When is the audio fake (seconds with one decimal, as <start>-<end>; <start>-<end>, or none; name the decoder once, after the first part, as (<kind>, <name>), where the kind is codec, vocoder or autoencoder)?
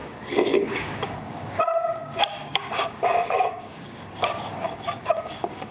0.0-5.7 (codec, DAC)